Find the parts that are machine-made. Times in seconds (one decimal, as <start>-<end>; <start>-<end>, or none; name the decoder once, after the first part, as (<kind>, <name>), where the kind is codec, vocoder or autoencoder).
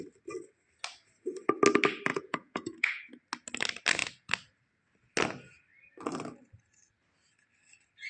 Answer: 2.1-3.1 (vocoder, Vocos)